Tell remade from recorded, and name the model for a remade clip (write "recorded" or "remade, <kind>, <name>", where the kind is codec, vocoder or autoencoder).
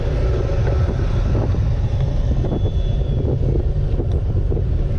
recorded